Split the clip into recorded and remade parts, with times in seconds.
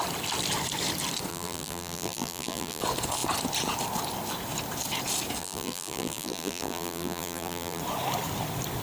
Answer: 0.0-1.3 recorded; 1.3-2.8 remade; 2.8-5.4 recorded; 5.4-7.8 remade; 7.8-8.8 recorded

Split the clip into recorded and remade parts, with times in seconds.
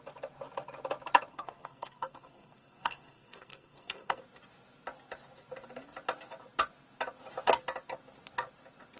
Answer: 0.0-1.3 recorded; 1.3-4.2 remade; 4.2-9.0 recorded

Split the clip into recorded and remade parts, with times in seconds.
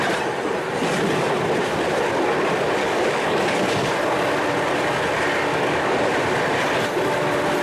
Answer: 0.0-2.8 recorded; 2.8-3.9 remade; 3.9-5.5 recorded; 5.5-6.1 remade; 6.1-7.6 recorded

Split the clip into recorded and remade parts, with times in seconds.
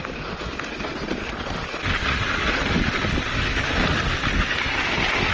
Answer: 0.0-2.0 recorded; 2.0-2.6 remade; 2.6-5.3 recorded